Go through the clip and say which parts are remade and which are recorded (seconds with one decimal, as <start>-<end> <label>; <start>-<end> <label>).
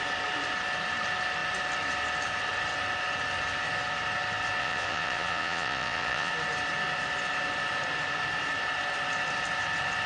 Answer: 0.0-4.6 recorded; 4.6-6.3 remade; 6.3-10.1 recorded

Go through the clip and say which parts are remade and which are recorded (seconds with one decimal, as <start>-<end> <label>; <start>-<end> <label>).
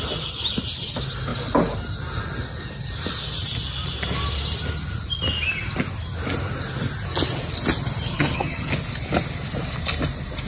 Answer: 0.0-8.1 recorded; 8.1-8.7 remade; 8.7-10.5 recorded